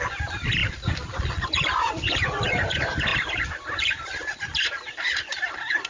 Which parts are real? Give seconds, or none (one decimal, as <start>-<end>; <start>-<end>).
0.0-0.6; 1.3-3.1; 5.4-5.9